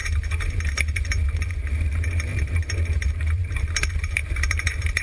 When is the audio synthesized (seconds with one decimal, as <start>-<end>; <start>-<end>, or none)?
0.0-5.0